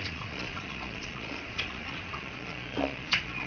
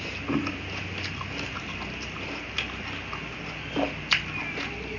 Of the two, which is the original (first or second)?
second